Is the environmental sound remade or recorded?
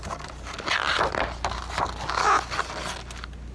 recorded